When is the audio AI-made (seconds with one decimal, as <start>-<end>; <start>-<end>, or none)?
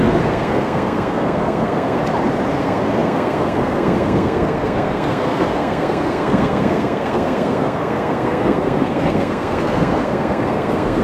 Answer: 0.0-2.0; 2.6-11.0